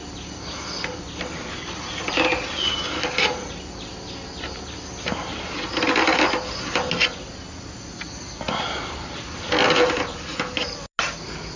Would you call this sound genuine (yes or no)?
yes